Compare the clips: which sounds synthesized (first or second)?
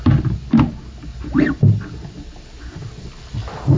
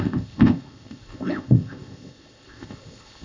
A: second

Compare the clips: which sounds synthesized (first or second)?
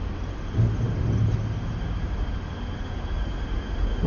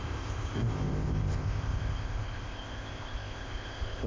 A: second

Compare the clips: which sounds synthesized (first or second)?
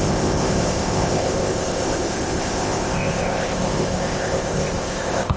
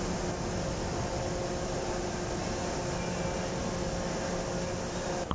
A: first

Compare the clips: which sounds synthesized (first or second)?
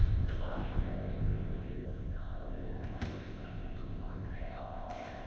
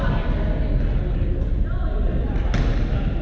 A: first